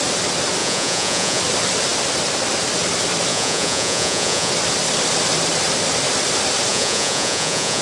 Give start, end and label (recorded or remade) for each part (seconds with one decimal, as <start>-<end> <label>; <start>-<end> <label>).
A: 0.0-0.6 recorded; 0.6-1.4 remade; 1.4-3.3 recorded; 3.3-4.5 remade; 4.5-6.7 recorded; 6.7-7.8 remade